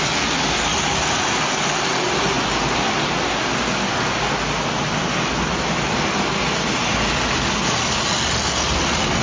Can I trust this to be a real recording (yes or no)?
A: yes